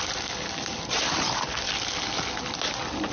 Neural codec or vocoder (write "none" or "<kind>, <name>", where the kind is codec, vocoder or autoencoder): none